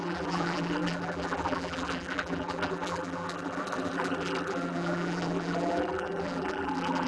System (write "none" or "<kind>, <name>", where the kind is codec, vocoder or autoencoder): vocoder, BigVGAN v2